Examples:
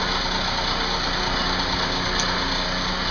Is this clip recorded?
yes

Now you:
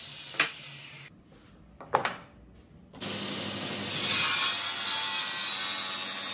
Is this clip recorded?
yes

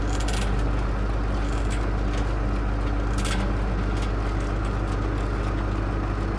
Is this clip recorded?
yes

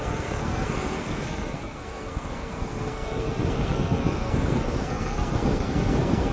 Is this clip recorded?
no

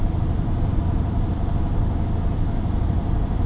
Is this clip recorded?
yes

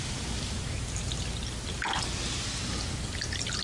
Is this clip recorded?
yes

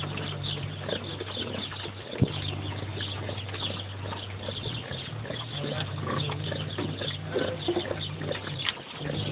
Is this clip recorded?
yes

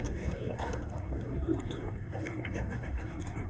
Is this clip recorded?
no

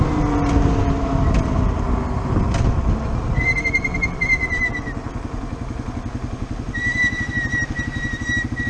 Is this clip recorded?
yes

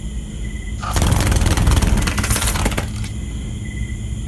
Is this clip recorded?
yes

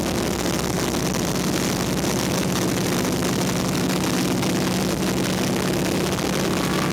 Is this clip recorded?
yes